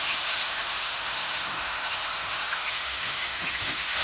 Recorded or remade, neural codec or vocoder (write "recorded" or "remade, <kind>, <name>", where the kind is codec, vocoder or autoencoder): remade, autoencoder, DAC-VAE